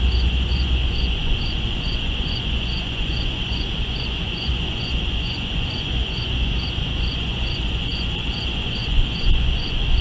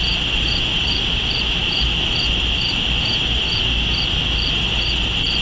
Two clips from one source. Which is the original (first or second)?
second